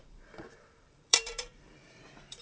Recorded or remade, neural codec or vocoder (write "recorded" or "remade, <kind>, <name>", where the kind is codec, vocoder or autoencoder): remade, vocoder, BigVGAN v2